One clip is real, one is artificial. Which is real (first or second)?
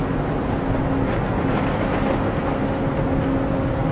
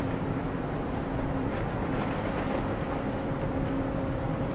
first